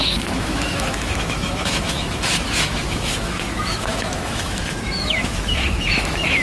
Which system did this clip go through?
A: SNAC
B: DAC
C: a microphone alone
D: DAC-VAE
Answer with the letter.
D